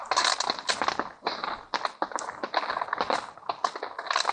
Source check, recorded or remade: recorded